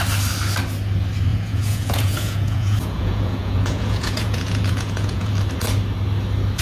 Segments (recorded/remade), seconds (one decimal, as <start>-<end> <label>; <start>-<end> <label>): 0.0-1.3 recorded; 1.3-5.3 remade; 5.3-6.6 recorded